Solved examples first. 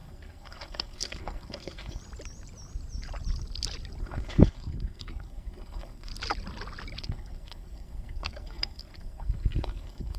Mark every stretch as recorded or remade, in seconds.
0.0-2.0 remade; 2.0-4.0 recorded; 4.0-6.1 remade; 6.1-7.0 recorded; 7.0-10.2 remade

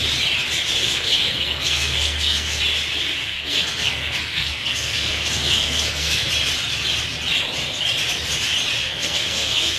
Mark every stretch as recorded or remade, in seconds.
0.0-0.8 recorded; 0.8-2.6 remade; 2.6-3.2 recorded; 3.2-6.3 remade; 6.3-8.8 recorded; 8.8-9.8 remade

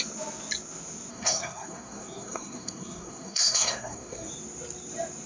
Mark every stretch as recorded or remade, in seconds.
0.0-1.1 recorded; 1.1-4.3 remade; 4.3-5.3 recorded

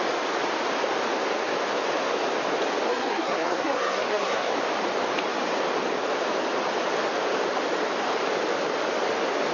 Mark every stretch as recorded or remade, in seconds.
0.0-2.9 recorded; 2.9-4.5 remade; 4.5-9.5 recorded

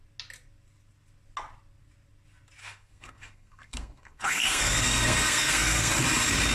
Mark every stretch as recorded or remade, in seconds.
0.0-2.6 recorded; 2.6-5.9 remade; 5.9-6.5 recorded

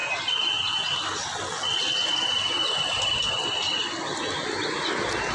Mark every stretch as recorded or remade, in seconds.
0.0-5.3 recorded

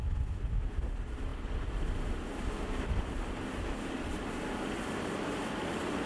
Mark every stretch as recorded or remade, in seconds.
0.0-6.1 recorded